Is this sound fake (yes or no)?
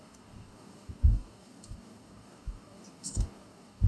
yes